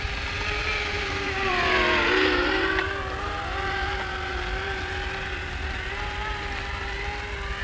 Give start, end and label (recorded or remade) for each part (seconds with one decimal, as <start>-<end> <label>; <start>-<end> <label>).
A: 0.0-0.6 recorded; 0.6-1.5 remade; 1.5-2.4 recorded; 2.4-3.3 remade; 3.3-7.6 recorded